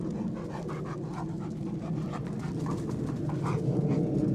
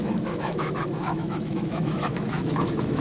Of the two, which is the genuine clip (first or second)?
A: first